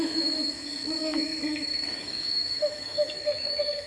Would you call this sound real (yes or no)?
no